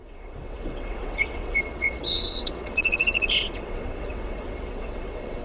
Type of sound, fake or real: fake